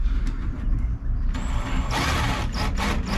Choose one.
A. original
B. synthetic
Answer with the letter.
A